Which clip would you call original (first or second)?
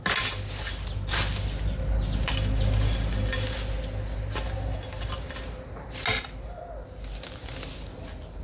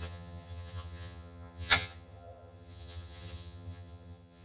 first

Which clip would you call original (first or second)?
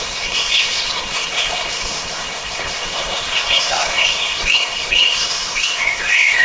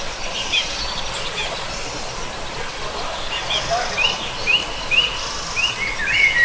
second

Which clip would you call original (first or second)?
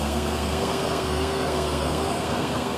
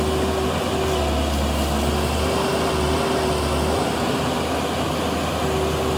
second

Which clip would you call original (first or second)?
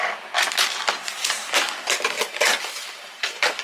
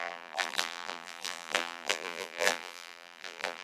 first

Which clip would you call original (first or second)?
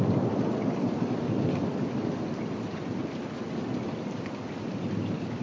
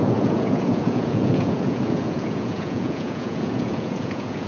first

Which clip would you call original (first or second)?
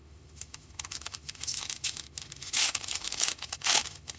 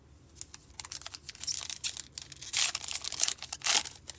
second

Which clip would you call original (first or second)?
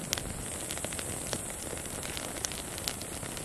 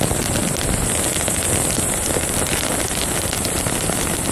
first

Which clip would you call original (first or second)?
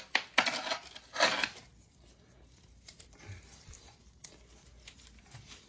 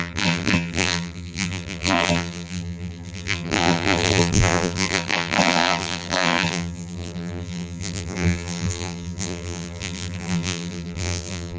first